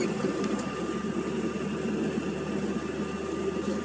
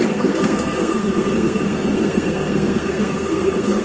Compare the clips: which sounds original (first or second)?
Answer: first